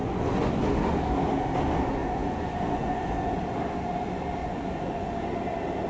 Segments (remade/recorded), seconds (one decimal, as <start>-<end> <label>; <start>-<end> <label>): 0.0-0.6 remade; 0.6-2.0 recorded; 2.0-3.3 remade; 3.3-4.4 recorded; 4.4-5.1 remade; 5.1-5.9 recorded